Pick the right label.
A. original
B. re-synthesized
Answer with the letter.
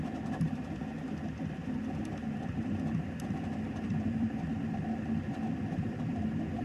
B